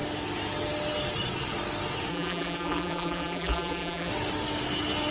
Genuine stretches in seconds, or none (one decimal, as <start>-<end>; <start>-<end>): 0.0-2.1; 4.1-5.1